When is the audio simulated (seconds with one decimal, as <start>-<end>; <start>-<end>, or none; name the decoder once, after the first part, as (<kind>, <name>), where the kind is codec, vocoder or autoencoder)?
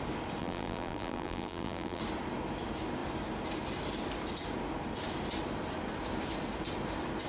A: 0.4-2.0 (vocoder, BigVGAN v2)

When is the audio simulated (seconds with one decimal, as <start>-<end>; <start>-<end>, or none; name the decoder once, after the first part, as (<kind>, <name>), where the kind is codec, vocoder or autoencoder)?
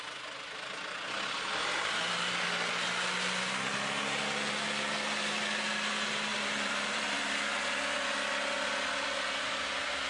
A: 6.3-7.4 (vocoder, BigVGAN v2)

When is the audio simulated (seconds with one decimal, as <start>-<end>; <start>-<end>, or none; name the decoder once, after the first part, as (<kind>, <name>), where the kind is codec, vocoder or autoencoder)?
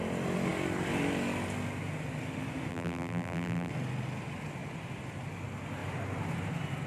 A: 2.7-3.7 (vocoder, BigVGAN v2)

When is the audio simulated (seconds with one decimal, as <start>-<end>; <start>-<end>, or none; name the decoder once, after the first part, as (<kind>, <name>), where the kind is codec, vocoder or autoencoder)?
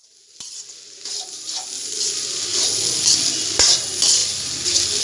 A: none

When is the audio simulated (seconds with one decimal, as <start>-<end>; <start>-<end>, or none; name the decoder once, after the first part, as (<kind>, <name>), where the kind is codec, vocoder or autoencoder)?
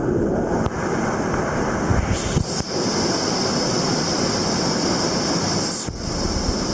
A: 0.6-1.9 (vocoder, BigVGAN v2); 2.4-6.7